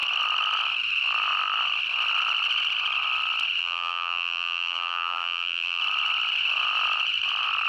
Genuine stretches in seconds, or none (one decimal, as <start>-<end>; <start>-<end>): 0.0-3.6; 5.8-7.7